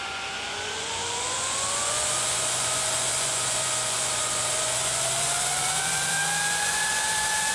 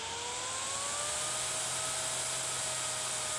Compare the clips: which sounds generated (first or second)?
first